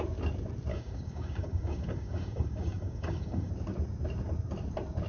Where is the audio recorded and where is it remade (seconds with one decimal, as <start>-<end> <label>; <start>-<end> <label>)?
0.0-0.7 recorded; 0.7-3.5 remade; 3.5-5.1 recorded